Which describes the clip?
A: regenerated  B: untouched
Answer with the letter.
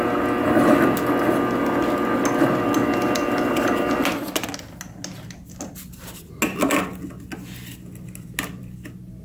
B